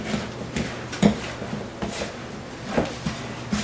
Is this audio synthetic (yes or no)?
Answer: no